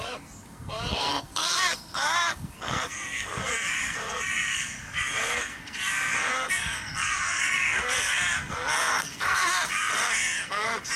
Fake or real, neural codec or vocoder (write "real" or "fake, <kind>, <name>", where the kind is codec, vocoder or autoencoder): fake, codec, SNAC